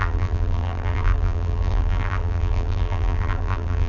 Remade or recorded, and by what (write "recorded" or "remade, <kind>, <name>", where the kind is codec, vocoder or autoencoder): remade, vocoder, BigVGAN v2